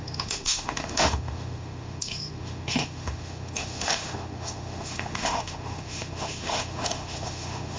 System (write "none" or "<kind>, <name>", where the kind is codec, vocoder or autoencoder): autoencoder, DAC-VAE